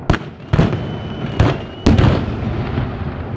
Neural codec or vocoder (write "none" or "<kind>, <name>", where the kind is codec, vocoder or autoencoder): none